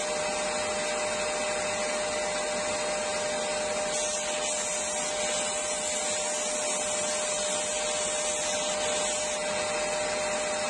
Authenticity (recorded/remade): recorded